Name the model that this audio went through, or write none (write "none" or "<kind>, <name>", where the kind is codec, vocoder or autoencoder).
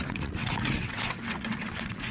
vocoder, WaveNeXt